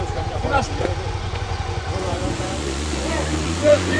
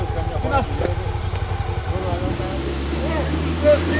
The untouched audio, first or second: second